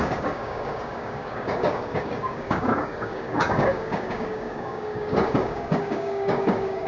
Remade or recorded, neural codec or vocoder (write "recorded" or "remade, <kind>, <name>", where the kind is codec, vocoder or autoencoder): remade, codec, DAC